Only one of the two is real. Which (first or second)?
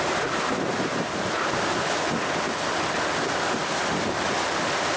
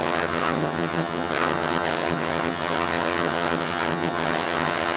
first